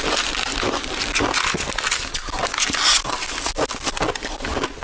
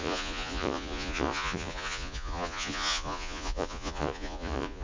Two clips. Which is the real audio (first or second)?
first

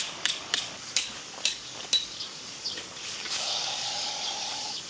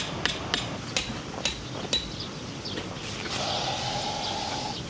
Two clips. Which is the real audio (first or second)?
second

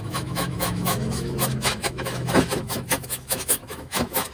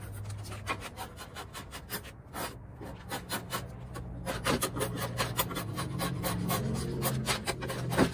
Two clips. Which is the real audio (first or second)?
second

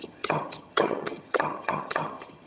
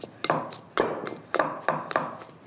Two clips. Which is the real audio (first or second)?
second